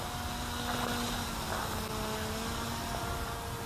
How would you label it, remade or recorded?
recorded